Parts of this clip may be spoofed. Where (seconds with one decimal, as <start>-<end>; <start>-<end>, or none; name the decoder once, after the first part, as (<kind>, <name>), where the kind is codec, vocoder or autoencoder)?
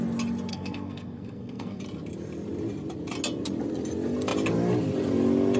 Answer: 0.5-1.8 (codec, SNAC)